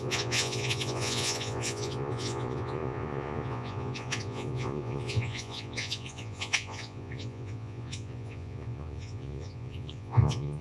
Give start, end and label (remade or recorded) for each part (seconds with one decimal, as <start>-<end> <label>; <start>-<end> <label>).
0.0-10.6 remade